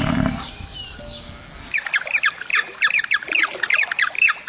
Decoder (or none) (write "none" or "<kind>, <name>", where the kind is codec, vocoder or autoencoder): none